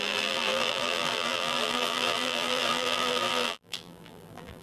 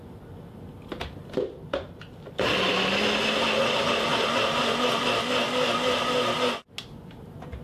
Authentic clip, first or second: second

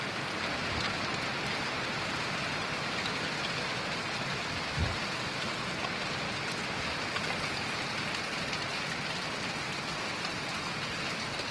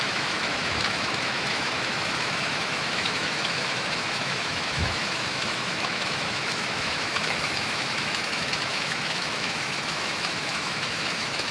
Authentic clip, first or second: first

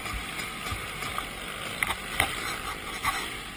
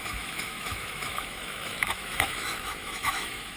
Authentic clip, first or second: first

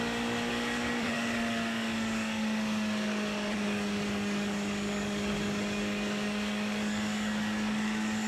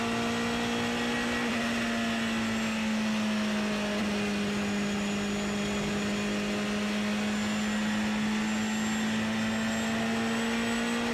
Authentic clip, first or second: second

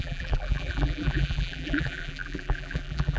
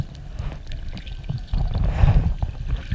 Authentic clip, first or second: second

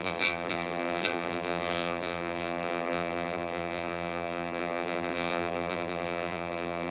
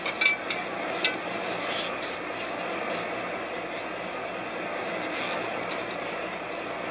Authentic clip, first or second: second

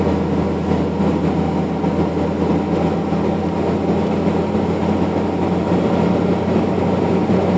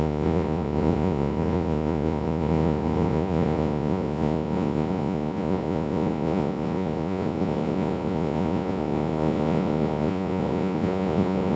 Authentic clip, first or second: first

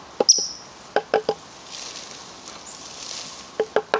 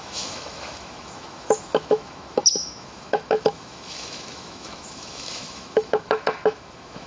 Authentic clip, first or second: first